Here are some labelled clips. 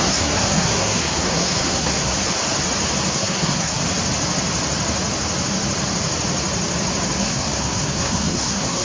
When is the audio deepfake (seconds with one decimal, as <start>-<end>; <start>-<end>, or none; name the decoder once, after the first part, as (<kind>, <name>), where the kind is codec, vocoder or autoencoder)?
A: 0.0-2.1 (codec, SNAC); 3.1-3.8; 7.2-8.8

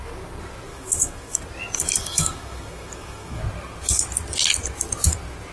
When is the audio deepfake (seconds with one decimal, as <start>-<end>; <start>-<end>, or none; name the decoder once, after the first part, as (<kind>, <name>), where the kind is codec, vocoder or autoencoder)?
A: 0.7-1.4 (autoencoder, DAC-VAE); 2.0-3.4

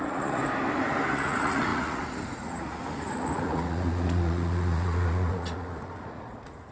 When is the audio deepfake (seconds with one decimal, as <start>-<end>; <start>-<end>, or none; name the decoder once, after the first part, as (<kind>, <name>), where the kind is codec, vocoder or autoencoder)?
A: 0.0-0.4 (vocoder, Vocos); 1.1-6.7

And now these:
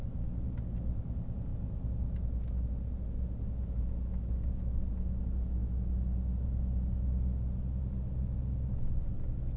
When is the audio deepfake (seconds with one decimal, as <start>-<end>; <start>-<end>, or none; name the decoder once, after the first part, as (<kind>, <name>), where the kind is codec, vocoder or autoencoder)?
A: none

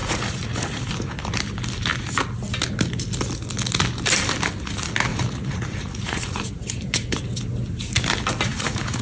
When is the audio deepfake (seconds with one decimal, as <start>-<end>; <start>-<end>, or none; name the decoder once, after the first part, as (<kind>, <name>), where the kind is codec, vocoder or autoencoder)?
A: 0.0-0.9 (vocoder, Vocos); 5.1-6.4; 8.5-9.0